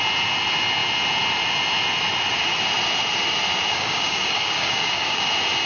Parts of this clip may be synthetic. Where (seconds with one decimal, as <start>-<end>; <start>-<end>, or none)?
3.7-5.3